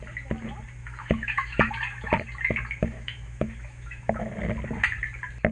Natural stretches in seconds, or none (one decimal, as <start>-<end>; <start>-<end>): 0.0-0.8; 1.7-2.8; 4.3-5.5